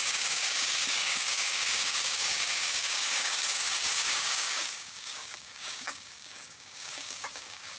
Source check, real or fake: fake